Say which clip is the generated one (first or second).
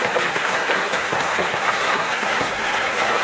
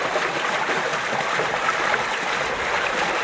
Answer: first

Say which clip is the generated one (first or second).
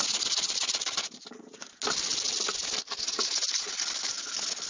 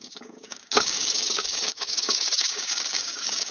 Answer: second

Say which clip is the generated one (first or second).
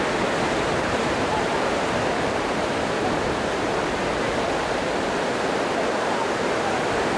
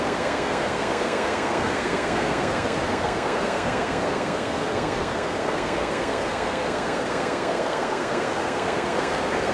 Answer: second